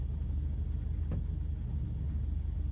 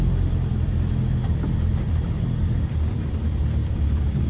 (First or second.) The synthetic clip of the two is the second